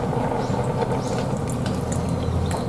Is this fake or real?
real